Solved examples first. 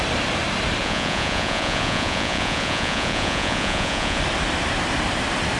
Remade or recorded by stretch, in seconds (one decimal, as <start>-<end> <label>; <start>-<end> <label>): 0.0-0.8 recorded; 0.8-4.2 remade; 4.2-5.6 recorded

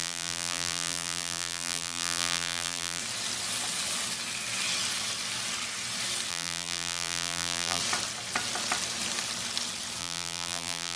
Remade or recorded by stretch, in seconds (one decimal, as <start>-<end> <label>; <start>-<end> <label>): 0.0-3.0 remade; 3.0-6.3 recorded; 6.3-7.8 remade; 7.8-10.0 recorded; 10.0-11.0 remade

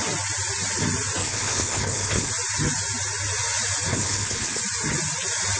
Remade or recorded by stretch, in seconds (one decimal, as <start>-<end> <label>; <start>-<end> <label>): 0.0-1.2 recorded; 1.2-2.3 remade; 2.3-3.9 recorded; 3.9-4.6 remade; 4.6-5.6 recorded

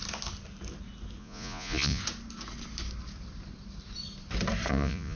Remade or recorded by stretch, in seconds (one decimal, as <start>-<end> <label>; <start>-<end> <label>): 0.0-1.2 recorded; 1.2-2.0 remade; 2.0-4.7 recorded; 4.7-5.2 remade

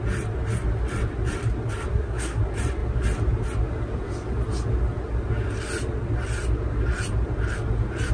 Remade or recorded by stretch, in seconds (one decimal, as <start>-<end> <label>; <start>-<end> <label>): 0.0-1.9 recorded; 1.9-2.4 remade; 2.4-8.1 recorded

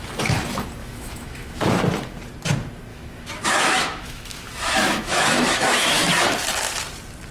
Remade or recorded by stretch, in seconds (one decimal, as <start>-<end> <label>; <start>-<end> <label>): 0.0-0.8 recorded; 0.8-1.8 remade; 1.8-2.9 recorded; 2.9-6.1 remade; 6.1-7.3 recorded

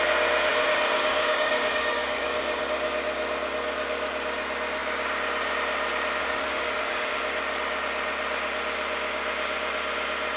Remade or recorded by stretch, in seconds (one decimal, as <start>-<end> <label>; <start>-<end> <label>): 0.0-0.5 recorded; 0.5-2.6 remade; 2.6-6.2 recorded; 6.2-7.2 remade; 7.2-10.4 recorded